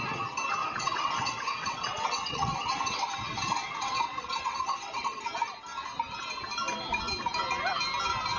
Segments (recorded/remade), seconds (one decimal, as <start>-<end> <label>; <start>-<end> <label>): 0.0-0.6 recorded; 0.6-5.2 remade; 5.2-8.4 recorded